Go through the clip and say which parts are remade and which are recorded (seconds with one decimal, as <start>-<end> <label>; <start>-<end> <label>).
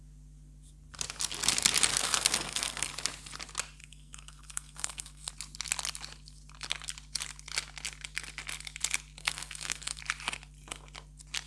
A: 0.0-1.9 recorded; 1.9-2.9 remade; 2.9-3.8 recorded; 3.8-5.3 remade; 5.3-9.2 recorded; 9.2-10.0 remade; 10.0-11.5 recorded